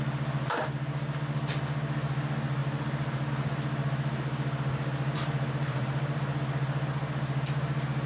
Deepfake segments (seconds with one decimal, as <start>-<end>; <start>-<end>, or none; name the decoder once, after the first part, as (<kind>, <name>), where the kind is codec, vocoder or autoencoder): 2.6-3.3 (vocoder, BigVGAN v2); 5.1-6.4